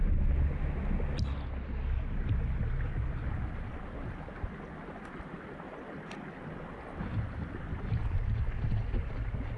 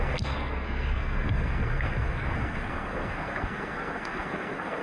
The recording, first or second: first